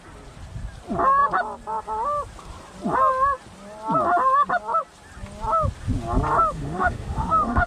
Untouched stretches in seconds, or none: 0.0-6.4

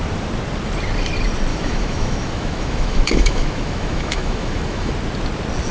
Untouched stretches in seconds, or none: 0.0-1.5; 4.9-5.7

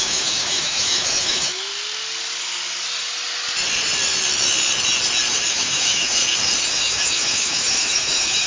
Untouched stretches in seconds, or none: 1.7-5.5; 6.2-6.8

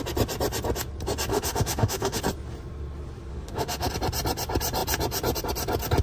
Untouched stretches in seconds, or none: 0.0-1.3; 2.2-3.3; 3.9-6.0

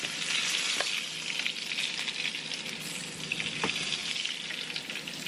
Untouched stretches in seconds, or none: 0.0-5.3

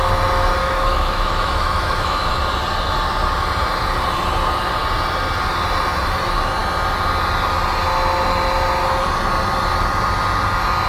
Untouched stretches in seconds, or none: 0.0-0.6; 2.3-10.9

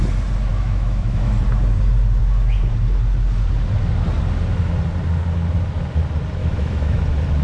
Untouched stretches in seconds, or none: 0.0-0.5; 1.3-6.4; 7.0-7.4